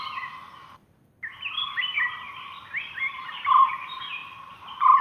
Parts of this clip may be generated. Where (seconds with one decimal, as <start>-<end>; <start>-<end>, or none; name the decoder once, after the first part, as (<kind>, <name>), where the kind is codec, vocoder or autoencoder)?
0.0-0.8 (vocoder, BigVGAN v2); 3.3-5.0